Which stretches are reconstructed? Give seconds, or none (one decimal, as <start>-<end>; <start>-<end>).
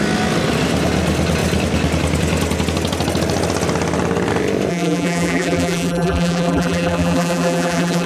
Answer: 4.7-8.1